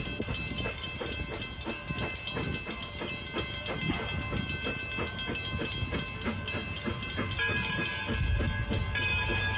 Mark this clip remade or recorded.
recorded